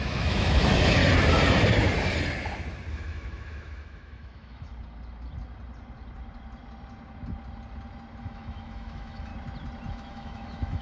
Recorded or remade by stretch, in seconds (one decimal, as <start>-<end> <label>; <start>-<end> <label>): 0.0-1.0 remade; 1.0-2.9 recorded; 2.9-4.7 remade; 4.7-8.2 recorded; 8.2-9.3 remade; 9.3-9.9 recorded; 9.9-10.8 remade